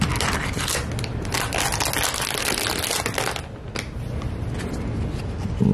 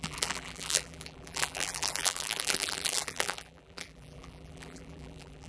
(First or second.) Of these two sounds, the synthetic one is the second